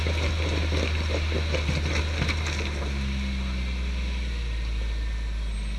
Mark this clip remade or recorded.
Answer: recorded